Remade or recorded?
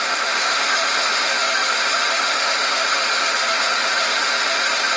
remade